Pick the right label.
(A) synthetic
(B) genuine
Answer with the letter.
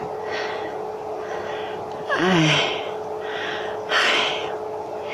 B